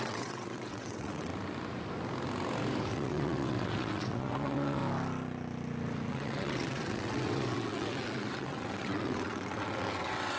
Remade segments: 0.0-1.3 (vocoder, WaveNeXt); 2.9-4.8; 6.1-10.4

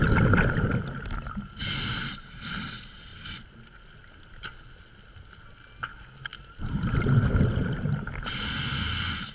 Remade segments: none

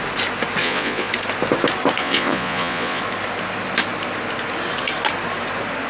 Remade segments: 0.6-1.1 (vocoder, Vocos); 2.0-3.0

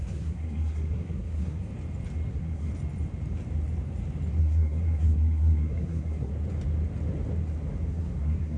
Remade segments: 0.0-1.7 (codec, SNAC); 2.3-2.7; 4.4-6.3; 7.9-8.6

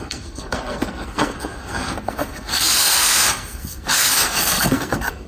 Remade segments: 0.0-5.3 (codec, SNAC)